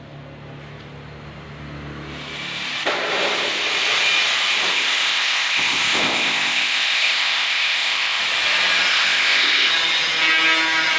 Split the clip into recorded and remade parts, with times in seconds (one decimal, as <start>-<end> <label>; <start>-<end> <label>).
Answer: 0.0-4.7 recorded; 4.7-8.2 remade; 8.2-8.9 recorded; 8.9-9.7 remade; 9.7-11.0 recorded